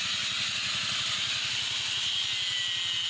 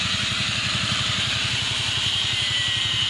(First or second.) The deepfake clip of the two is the second